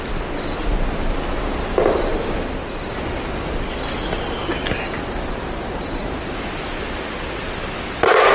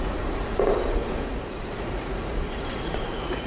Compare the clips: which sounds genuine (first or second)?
first